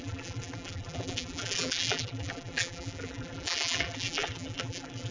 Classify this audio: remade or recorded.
remade